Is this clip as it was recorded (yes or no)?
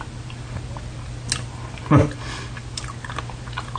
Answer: yes